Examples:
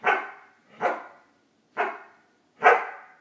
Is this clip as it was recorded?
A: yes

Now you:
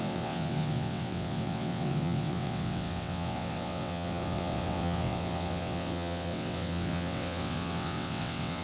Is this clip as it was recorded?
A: no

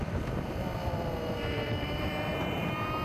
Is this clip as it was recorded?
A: no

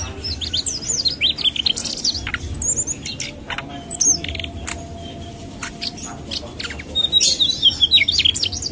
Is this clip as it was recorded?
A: yes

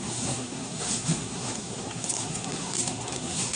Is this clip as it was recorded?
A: no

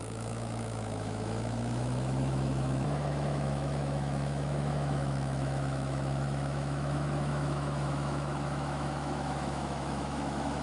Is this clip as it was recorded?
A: no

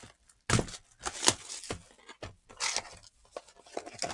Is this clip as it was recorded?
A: yes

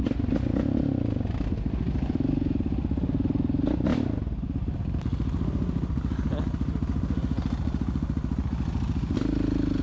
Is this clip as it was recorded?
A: yes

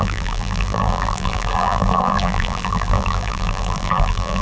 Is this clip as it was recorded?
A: no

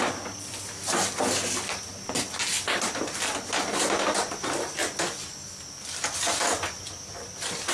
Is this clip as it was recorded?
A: yes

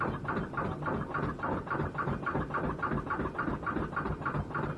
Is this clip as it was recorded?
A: no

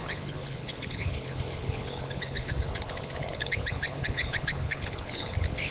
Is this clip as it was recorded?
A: no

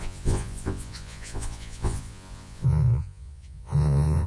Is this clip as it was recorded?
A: no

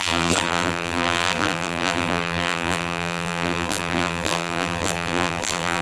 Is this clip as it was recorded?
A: no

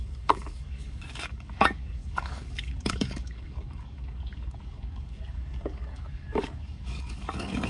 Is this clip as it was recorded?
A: no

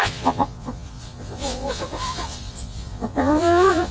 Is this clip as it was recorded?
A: no